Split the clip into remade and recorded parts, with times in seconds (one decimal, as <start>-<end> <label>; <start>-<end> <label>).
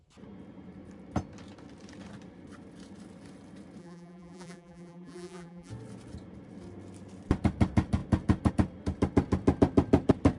0.0-3.8 recorded; 3.8-5.7 remade; 5.7-10.4 recorded